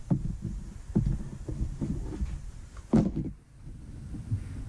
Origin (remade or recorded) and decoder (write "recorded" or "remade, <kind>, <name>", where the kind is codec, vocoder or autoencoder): recorded